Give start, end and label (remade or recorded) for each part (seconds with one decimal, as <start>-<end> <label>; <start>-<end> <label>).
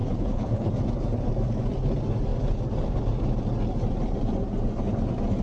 0.0-0.7 remade; 0.7-5.4 recorded